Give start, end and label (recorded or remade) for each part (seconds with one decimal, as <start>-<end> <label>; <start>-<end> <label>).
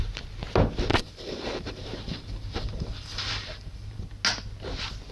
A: 0.0-0.9 recorded; 0.9-4.0 remade; 4.0-5.1 recorded